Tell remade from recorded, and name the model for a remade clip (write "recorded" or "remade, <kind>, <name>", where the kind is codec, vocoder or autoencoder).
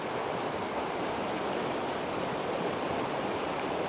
remade, vocoder, BigVGAN v2